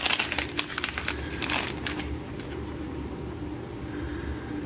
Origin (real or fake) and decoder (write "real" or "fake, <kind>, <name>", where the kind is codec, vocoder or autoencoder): real